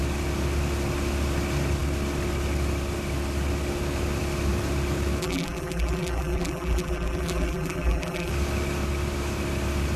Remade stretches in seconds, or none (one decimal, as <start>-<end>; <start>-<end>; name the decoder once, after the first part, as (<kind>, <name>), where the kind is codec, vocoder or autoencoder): 5.2-8.3 (vocoder, BigVGAN v2)

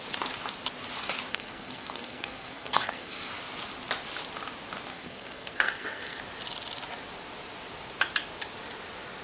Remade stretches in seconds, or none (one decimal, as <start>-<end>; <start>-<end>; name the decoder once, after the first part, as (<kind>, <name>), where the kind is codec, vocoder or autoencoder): 1.3-3.3 (codec, SNAC); 4.9-6.2

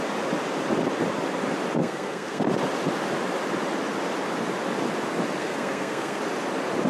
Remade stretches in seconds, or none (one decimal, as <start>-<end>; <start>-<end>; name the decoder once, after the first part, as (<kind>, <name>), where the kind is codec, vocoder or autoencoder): 1.8-2.4 (codec, SNAC); 5.4-6.2